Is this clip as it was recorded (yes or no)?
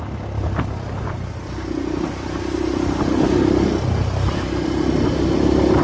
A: yes